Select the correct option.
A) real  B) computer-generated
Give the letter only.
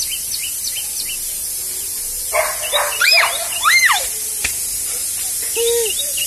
A